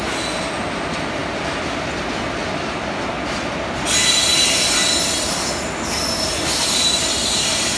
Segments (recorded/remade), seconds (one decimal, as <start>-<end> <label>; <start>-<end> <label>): 0.0-7.8 recorded

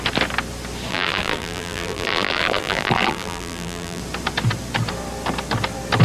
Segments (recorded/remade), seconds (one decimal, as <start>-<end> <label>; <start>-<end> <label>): 0.0-0.9 recorded; 0.9-4.0 remade; 4.0-6.0 recorded

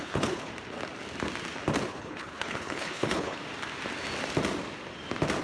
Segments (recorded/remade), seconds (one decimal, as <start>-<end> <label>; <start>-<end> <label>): 0.0-0.5 remade; 0.5-1.9 recorded; 1.9-3.4 remade; 3.4-5.4 recorded

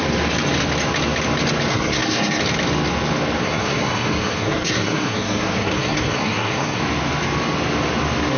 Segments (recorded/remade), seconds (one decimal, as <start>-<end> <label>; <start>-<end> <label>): 0.0-1.7 recorded; 1.7-2.4 remade; 2.4-3.4 recorded; 3.4-6.8 remade; 6.8-8.4 recorded

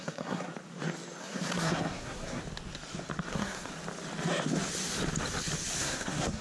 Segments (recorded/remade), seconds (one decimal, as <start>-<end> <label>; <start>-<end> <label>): 0.0-0.5 remade; 0.5-1.2 recorded; 1.2-2.4 remade; 2.4-3.3 recorded; 3.3-3.7 remade; 3.7-5.8 recorded; 5.8-6.4 remade

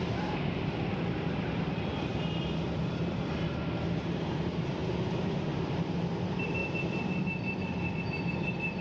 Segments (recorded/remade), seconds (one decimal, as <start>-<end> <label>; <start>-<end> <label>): 0.0-6.6 remade; 6.6-8.2 recorded; 8.2-8.8 remade